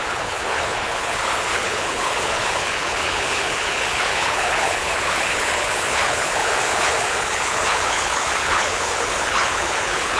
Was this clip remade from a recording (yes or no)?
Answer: yes